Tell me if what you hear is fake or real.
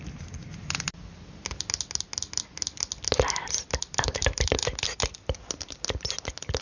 real